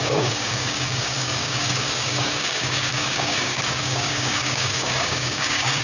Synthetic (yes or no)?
yes